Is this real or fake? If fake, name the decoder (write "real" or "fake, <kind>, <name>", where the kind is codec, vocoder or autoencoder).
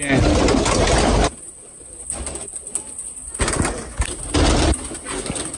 real